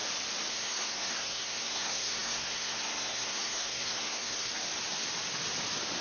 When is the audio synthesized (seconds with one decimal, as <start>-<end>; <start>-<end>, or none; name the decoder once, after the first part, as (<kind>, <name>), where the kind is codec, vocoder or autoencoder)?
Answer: 0.5-4.5 (codec, SNAC)